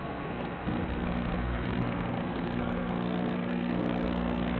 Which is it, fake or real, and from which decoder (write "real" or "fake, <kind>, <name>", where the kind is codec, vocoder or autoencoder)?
fake, codec, SNAC